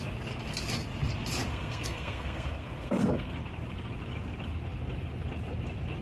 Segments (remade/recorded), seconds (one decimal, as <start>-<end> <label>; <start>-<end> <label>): 0.0-1.5 recorded; 1.5-3.3 remade; 3.3-6.0 recorded